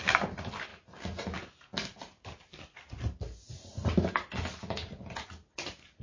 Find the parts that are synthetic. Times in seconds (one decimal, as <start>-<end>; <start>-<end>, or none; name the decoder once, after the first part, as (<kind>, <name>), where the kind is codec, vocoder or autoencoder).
none